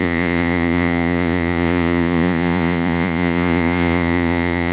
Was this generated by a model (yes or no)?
yes